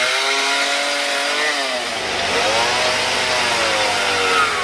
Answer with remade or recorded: recorded